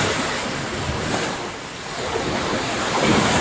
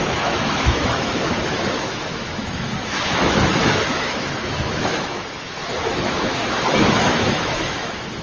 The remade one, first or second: second